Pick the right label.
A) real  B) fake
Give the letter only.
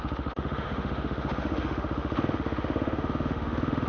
B